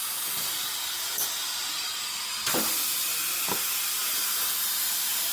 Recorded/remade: recorded